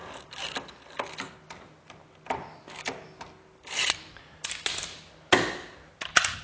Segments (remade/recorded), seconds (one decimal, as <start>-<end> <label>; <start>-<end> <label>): 0.0-6.4 recorded